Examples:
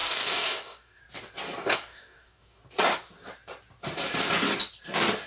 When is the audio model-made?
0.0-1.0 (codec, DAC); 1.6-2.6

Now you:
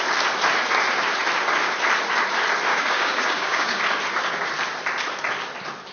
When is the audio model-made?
2.7-3.8 (codec, DAC)

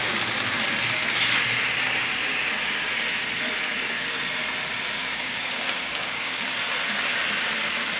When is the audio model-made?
5.0-6.6 (codec, DAC)

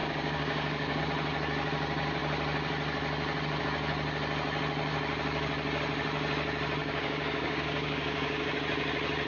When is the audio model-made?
0.0-1.0 (codec, DAC); 6.8-8.5

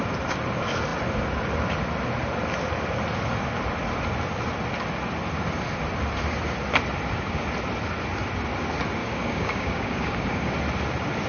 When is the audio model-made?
9.0-10.5 (codec, DAC)

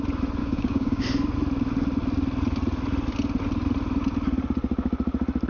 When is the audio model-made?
0.4-1.0 (codec, DAC)

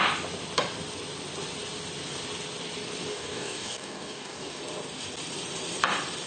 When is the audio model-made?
3.1-4.6 (codec, DAC)

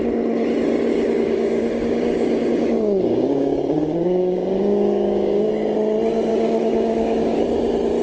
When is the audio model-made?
0.9-5.5 (codec, DAC); 6.3-7.4